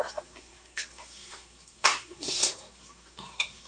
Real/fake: fake